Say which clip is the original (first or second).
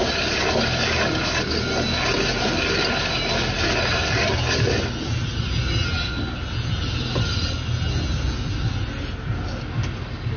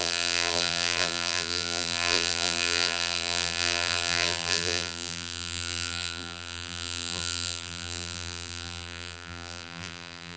first